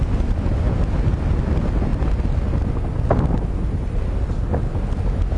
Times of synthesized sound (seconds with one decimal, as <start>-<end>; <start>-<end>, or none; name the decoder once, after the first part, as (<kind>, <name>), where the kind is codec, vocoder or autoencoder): none